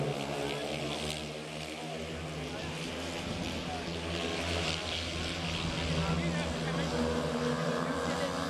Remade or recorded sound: recorded